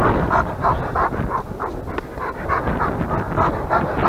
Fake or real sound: real